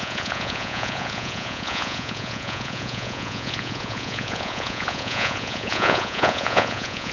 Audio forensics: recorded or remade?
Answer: remade